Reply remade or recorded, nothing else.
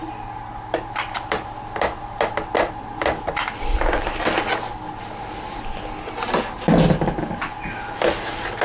recorded